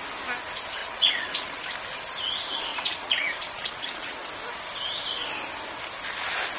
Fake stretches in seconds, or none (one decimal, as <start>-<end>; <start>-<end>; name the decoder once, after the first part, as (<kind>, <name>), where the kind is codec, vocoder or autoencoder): 0.8-1.6 (vocoder, WaveNeXt); 2.7-4.3